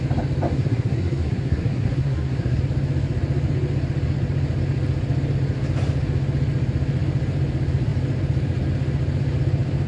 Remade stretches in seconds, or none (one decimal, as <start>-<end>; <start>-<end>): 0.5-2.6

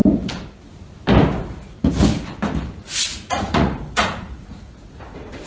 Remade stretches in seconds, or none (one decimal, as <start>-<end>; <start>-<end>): 2.7-5.5

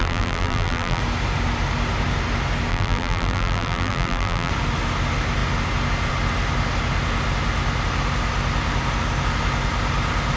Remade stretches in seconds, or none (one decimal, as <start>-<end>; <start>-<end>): 0.0-1.0; 2.7-4.5

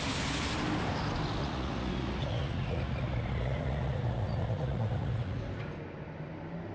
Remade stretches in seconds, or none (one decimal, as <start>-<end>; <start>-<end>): 1.4-5.4

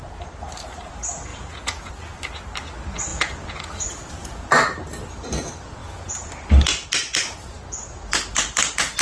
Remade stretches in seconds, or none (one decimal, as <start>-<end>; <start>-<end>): 1.3-1.9; 3.1-3.7; 5.8-6.3